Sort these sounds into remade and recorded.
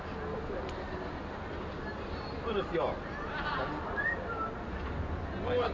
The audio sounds recorded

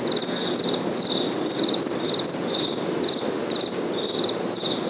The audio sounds recorded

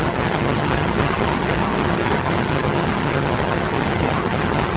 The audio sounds remade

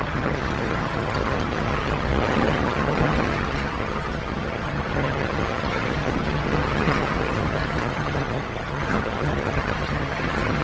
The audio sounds remade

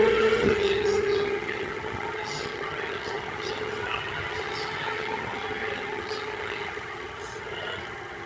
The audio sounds remade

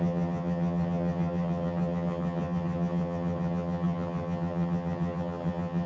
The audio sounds remade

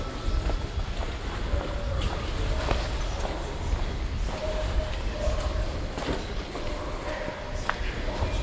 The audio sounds recorded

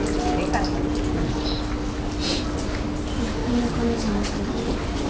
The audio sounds recorded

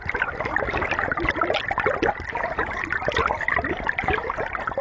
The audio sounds recorded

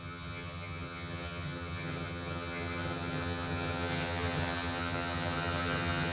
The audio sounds remade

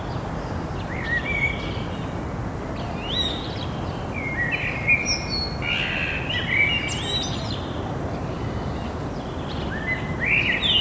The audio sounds recorded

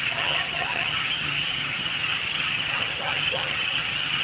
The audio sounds remade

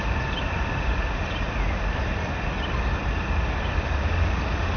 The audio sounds recorded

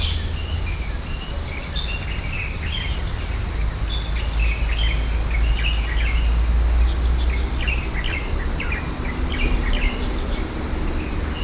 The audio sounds recorded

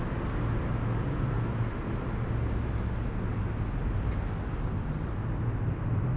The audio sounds recorded